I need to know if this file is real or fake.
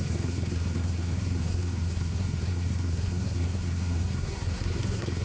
fake